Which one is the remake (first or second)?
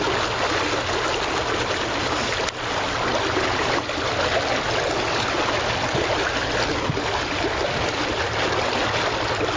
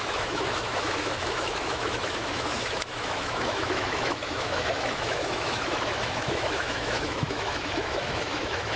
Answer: second